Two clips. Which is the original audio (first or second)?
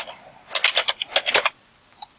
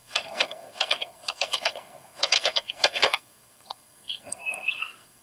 first